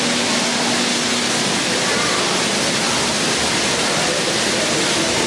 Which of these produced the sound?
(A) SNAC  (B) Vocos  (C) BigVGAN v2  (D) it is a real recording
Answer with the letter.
D